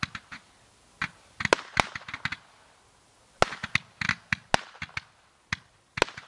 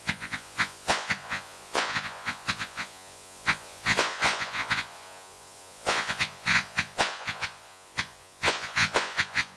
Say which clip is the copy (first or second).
second